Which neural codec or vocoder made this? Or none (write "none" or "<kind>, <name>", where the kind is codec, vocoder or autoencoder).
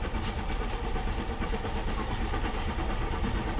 none